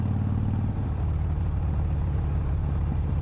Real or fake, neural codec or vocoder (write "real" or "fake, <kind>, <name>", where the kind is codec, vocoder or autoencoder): real